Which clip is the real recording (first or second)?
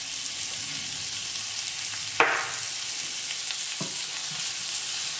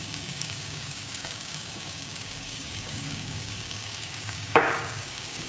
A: first